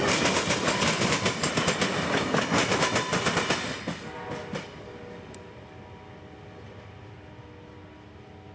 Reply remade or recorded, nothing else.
recorded